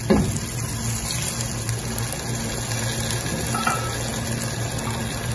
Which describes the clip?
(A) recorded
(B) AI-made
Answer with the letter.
A